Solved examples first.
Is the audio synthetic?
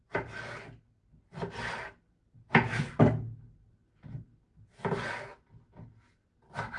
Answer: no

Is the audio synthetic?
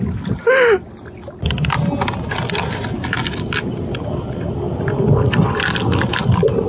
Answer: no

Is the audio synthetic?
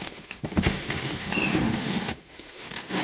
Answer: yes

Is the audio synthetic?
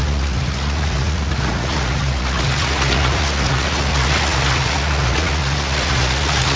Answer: yes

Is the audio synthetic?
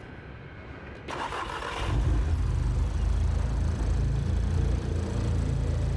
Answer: no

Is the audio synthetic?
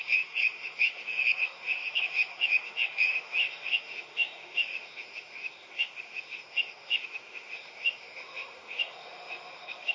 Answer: yes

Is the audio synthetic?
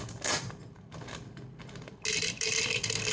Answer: no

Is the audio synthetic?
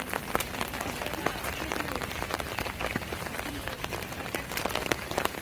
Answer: yes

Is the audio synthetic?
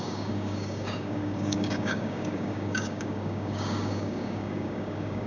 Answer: yes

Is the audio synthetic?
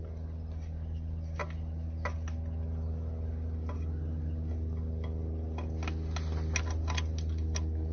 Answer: no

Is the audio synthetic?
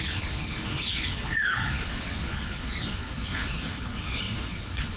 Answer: yes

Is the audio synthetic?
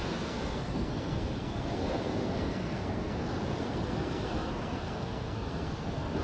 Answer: yes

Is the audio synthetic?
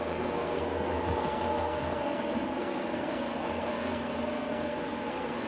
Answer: yes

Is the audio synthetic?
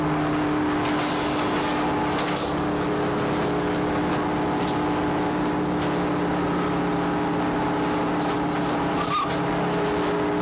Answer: no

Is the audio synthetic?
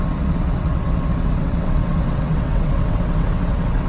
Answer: yes